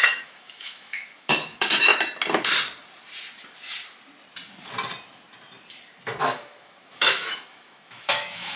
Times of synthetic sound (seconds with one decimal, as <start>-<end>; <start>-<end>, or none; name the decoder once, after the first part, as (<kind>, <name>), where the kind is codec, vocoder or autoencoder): 0.0-1.9 (autoencoder, DAC-VAE); 6.2-8.6

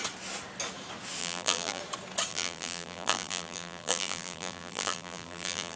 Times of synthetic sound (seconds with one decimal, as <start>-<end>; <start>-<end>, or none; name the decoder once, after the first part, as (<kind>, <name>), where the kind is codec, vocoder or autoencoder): 1.2-1.8 (vocoder, BigVGAN v2); 2.3-5.8

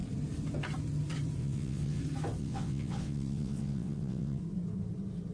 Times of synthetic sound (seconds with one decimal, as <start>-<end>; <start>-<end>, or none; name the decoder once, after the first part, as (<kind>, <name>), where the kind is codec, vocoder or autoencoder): 1.4-2.0 (vocoder, WaveNeXt); 2.4-4.4

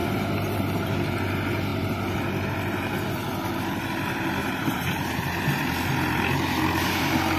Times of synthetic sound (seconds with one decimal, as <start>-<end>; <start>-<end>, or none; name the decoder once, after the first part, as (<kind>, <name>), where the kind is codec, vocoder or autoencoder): 4.4-5.4 (vocoder, BigVGAN v2)